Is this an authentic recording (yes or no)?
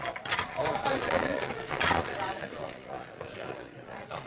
no